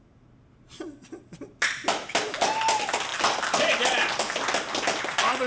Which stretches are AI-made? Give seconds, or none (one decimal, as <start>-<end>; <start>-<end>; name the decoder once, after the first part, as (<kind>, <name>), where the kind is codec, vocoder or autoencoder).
none